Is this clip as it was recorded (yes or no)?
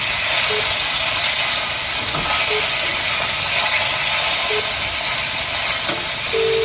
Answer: yes